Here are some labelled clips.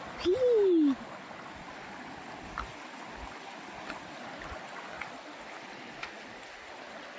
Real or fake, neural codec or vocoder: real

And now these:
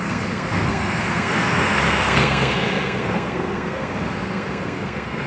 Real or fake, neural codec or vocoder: fake, codec, SNAC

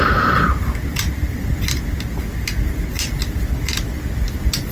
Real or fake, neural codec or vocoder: real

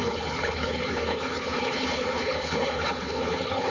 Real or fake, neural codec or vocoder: fake, codec, HILCodec